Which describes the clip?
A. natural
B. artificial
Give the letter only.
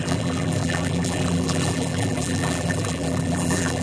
B